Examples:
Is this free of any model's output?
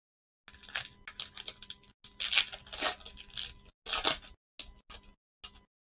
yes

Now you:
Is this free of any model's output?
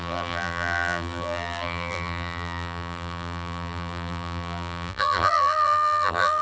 no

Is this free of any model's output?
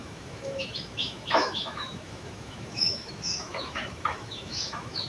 no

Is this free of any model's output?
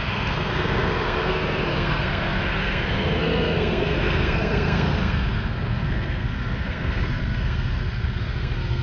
no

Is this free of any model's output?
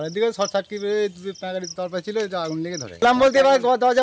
yes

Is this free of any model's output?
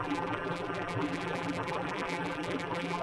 no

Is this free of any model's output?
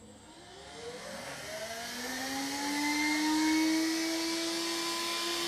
yes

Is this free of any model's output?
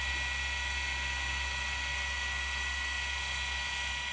yes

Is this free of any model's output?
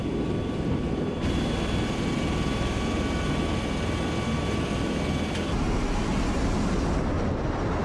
yes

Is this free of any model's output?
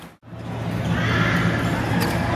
yes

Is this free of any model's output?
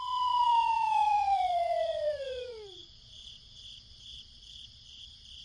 no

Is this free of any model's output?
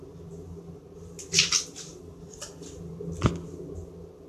yes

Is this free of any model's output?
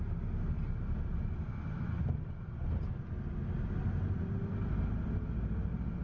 yes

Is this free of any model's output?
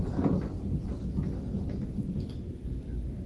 no